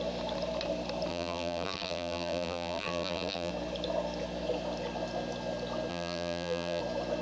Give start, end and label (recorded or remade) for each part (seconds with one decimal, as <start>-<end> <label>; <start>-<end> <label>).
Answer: 0.0-1.1 recorded; 1.1-3.5 remade; 3.5-5.9 recorded; 5.9-6.8 remade; 6.8-7.2 recorded